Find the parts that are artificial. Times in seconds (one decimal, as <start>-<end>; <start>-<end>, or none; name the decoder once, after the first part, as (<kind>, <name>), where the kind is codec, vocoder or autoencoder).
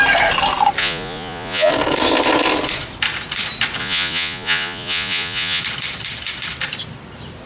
0.8-1.7 (vocoder, Vocos); 3.8-5.6